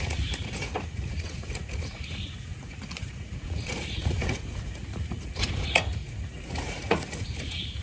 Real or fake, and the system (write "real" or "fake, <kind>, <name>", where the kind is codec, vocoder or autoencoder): fake, vocoder, Vocos